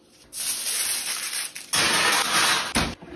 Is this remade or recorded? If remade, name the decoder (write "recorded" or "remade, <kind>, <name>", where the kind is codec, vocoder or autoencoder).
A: recorded